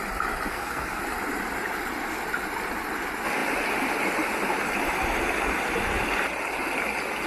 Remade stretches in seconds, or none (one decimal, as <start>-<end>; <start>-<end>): 0.5-1.0